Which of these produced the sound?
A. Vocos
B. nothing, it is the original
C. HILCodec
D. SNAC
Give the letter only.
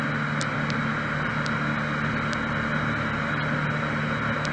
B